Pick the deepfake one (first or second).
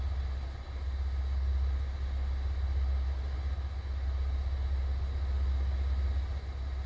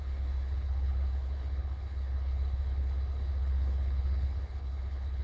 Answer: second